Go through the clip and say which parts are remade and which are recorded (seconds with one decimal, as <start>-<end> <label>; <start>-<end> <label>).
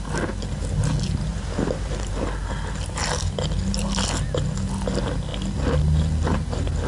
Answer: 0.0-1.3 recorded; 1.3-2.1 remade; 2.1-6.9 recorded